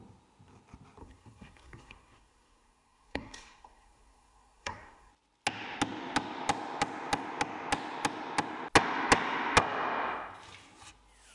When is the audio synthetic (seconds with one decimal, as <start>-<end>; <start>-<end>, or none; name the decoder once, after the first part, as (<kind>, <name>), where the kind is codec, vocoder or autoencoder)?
1.0-5.1 (codec, SNAC)